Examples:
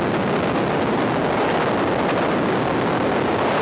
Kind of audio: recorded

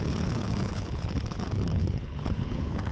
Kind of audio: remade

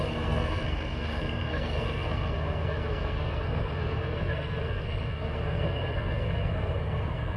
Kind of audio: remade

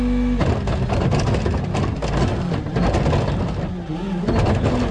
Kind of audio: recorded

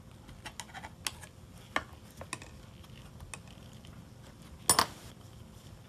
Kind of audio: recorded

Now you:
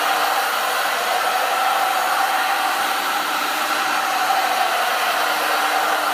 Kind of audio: remade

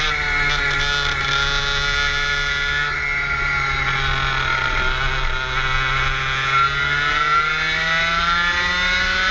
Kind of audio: recorded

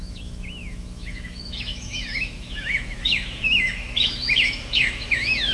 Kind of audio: remade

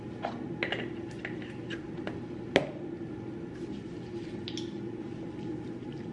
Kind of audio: recorded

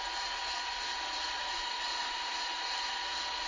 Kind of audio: recorded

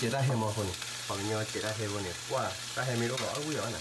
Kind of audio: recorded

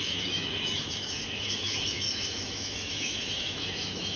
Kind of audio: remade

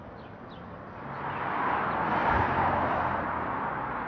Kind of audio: recorded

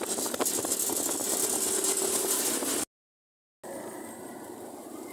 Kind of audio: recorded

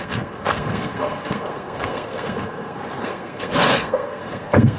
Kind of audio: remade